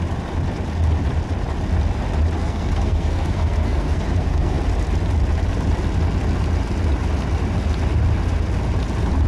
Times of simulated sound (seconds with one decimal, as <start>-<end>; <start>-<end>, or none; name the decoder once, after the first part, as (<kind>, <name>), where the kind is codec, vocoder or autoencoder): 2.4-4.6 (codec, SNAC)